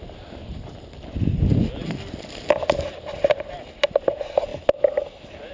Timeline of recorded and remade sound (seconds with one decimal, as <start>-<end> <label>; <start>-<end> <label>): 0.0-5.5 recorded